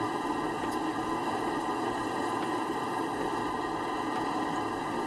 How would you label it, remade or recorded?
recorded